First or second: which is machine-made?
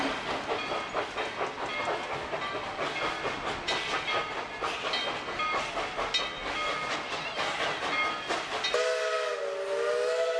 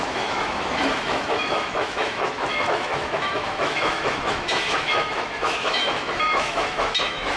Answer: second